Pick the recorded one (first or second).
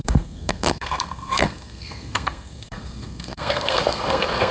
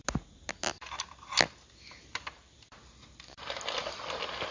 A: second